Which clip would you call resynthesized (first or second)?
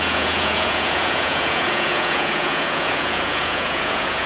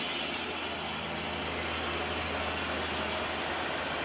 first